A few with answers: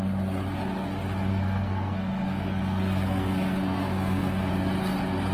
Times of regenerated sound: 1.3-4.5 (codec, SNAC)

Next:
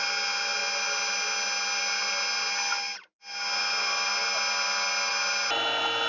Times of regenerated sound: none

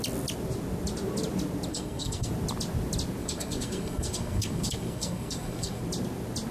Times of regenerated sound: 1.7-2.3 (codec, SNAC); 3.2-5.8

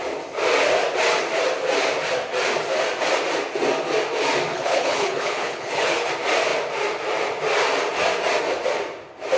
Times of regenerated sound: 4.5-6.1 (codec, HILCodec)

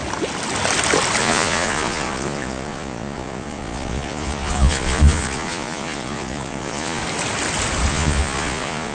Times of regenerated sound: 1.2-7.0 (vocoder, Vocos); 7.9-8.9

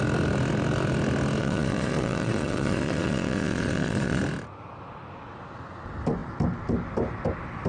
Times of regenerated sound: 1.4-4.2 (vocoder, Vocos)

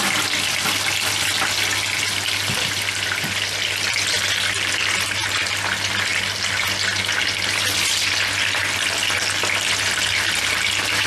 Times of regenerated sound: none